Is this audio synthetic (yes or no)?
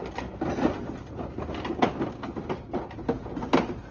no